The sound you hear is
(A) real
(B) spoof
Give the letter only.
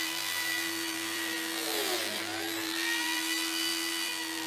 B